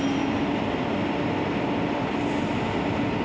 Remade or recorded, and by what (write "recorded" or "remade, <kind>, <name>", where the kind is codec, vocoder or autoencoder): recorded